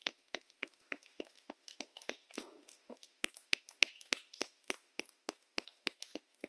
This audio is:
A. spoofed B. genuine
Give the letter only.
A